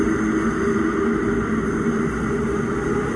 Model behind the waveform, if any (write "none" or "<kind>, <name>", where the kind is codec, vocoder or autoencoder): none